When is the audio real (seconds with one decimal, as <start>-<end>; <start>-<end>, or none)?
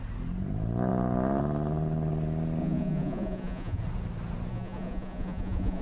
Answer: 0.0-2.6; 3.8-4.5